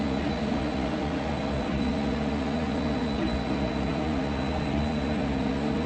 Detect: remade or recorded remade